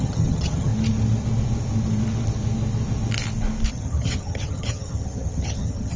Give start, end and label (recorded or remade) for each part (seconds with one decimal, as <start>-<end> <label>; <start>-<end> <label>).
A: 0.0-0.7 remade; 0.7-3.7 recorded; 3.7-6.0 remade

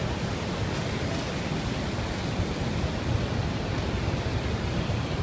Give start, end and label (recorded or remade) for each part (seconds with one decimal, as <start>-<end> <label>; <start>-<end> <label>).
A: 0.0-5.2 recorded

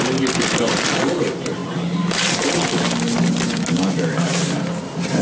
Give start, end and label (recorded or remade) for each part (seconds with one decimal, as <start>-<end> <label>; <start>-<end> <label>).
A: 0.0-5.2 recorded

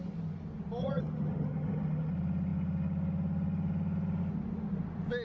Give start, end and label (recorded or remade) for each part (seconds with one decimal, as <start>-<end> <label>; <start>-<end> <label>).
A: 0.0-0.8 recorded; 0.8-2.1 remade; 2.1-5.2 recorded

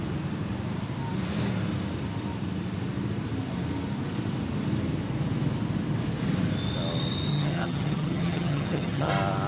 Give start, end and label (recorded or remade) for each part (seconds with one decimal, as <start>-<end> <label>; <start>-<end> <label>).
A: 0.0-7.3 recorded; 7.3-9.1 remade; 9.1-9.5 recorded

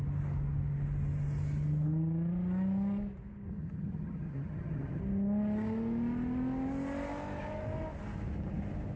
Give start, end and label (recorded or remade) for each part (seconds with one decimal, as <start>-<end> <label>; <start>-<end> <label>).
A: 0.0-3.5 recorded; 3.5-5.0 remade; 5.0-9.0 recorded